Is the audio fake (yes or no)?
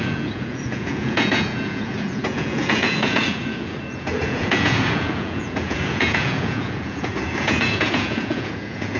yes